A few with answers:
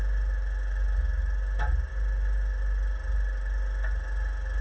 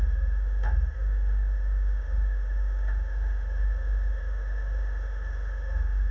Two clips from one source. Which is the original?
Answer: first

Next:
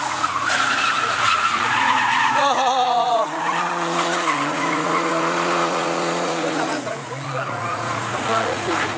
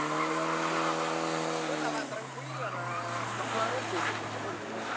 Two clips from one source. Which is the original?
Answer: second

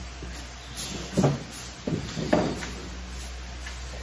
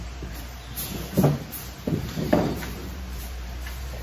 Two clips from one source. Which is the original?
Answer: first